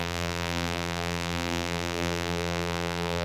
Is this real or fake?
fake